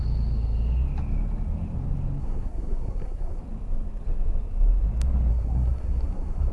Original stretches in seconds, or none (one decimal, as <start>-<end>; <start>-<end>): 0.0-2.2; 3.4-5.3